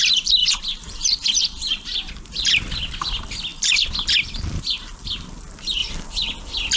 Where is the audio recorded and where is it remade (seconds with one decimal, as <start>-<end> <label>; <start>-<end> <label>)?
0.0-0.4 recorded; 0.4-2.7 remade; 2.7-3.5 recorded; 3.5-5.1 remade; 5.1-6.8 recorded